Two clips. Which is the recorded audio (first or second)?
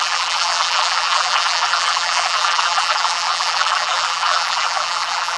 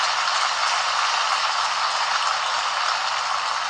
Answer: second